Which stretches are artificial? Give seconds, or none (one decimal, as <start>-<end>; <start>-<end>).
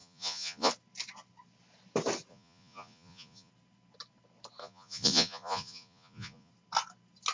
0.0-0.7; 2.3-3.5; 4.6-6.5